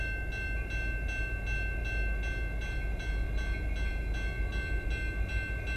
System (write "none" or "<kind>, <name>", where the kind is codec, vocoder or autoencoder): none